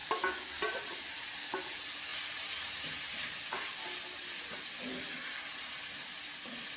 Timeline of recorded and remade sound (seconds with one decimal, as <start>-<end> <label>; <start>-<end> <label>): 0.0-0.6 remade; 0.6-6.8 recorded